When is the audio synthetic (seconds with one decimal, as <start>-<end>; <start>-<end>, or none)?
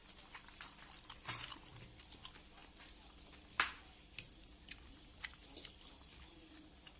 0.0-7.0